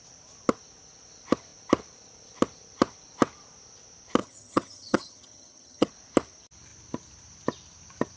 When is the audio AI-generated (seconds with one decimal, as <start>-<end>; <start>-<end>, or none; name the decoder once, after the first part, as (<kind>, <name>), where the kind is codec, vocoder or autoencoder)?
4.2-5.9 (vocoder, HiFi-GAN)